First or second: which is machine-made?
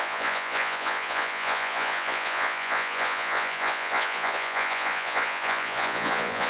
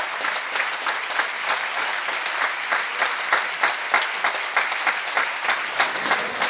first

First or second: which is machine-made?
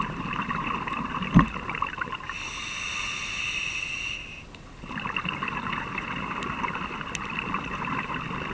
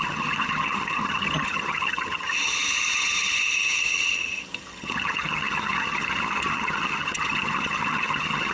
second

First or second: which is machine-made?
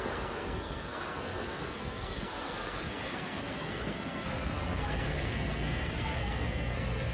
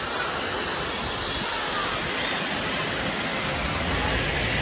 first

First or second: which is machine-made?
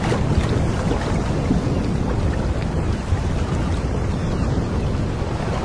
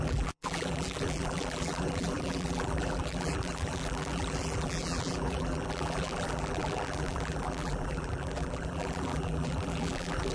second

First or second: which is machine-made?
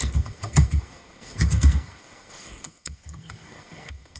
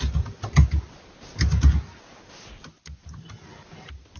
first